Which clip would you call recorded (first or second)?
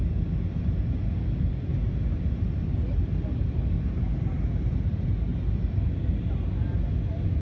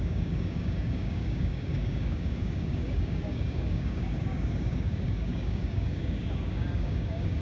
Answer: first